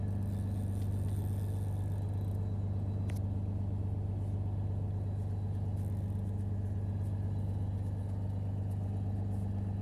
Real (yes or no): yes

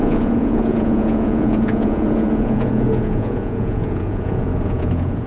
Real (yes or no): no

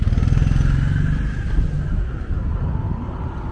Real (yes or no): yes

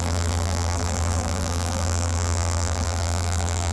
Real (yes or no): no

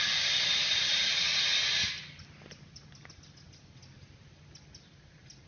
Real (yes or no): yes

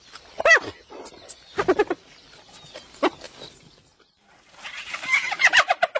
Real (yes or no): yes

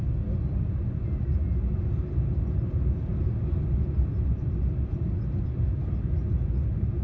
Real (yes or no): yes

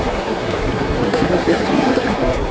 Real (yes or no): no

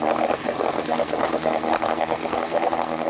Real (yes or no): no